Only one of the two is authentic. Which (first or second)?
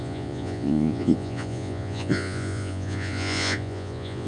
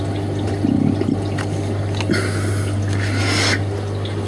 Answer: second